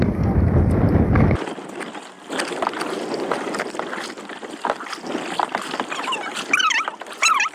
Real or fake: real